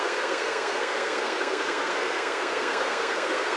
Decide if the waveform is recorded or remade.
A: remade